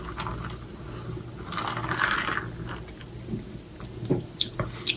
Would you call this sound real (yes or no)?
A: yes